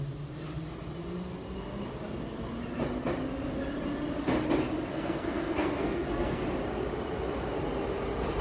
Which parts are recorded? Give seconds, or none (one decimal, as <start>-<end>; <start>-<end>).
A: 0.0-4.9; 6.4-8.4